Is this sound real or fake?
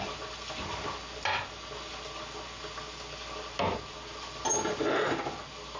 real